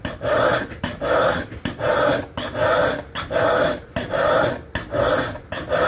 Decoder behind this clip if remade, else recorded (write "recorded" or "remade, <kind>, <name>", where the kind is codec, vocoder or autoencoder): recorded